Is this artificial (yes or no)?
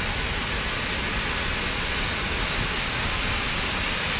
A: no